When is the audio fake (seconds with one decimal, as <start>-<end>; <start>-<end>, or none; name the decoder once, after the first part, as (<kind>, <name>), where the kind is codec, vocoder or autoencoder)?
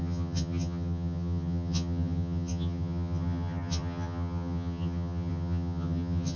0.0-6.4 (vocoder, HiFi-GAN)